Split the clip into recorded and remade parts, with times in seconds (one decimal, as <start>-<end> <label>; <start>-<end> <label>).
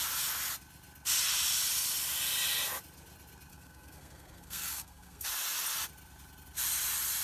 0.0-3.5 recorded; 3.5-5.3 remade; 5.3-7.2 recorded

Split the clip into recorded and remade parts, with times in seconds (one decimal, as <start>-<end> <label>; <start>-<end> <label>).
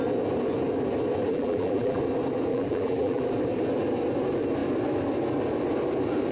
0.0-1.3 recorded; 1.3-2.0 remade; 2.0-2.5 recorded; 2.5-3.2 remade; 3.2-6.3 recorded